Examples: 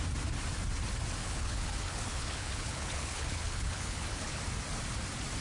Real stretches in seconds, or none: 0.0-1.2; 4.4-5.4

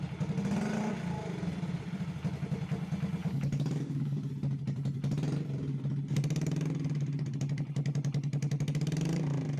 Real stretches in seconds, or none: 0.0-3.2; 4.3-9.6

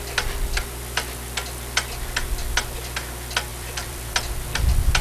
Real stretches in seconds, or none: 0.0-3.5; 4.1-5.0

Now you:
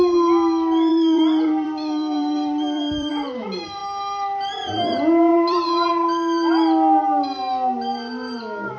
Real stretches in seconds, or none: 0.0-0.9; 3.1-5.3; 5.9-8.8

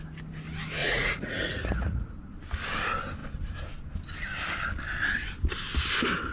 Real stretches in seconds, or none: 0.0-0.8; 2.1-6.3

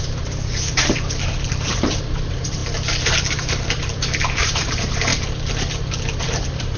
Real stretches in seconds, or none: 2.6-3.2; 5.1-6.2

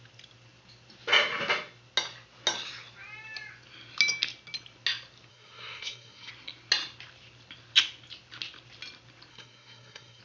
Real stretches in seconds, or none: 0.0-5.3; 6.3-9.3

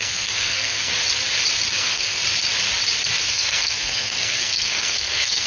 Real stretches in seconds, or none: 0.9-1.7; 2.2-3.2